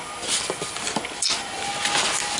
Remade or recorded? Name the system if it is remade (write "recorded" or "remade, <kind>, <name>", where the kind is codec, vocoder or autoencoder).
recorded